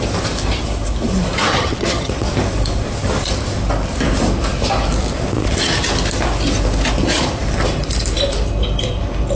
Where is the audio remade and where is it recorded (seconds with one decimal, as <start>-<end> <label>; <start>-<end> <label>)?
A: 0.0-1.5 recorded; 1.5-2.1 remade; 2.1-9.4 recorded